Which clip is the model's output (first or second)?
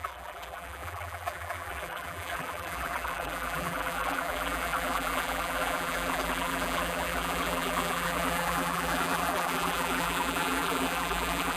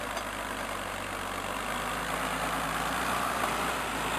first